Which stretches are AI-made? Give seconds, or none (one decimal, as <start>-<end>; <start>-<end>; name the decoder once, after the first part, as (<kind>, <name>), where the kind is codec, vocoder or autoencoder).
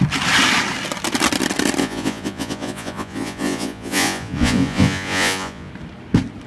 1.8-5.7 (vocoder, Vocos)